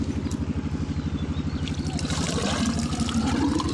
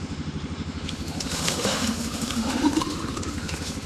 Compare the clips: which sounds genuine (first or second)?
first